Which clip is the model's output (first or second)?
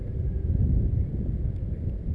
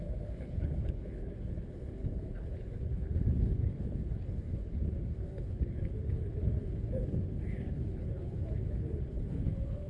second